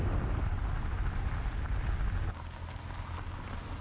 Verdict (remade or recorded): recorded